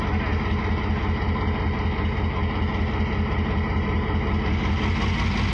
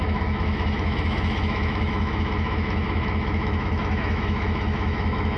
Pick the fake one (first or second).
second